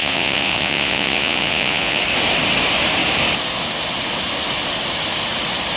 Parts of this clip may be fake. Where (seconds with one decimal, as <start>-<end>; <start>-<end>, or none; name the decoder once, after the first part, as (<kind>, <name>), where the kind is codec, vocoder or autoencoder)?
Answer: 0.0-2.0 (vocoder, Vocos)